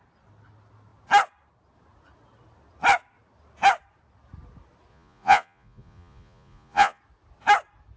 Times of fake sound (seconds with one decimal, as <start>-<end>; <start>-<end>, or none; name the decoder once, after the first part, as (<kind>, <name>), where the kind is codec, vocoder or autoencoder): 4.9-7.0 (vocoder, Vocos)

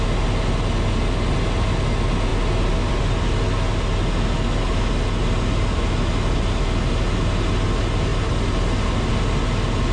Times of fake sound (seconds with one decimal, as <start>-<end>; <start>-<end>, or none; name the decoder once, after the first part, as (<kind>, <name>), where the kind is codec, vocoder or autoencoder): none

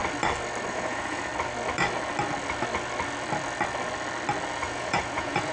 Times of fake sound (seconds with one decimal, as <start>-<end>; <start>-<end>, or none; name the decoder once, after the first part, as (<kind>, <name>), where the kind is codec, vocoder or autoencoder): 0.7-1.3 (vocoder, Vocos); 4.6-5.5